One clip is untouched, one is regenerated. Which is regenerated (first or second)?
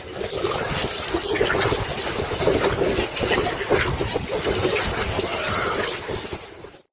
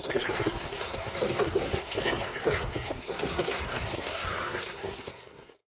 second